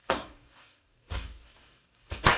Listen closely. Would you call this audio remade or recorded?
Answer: remade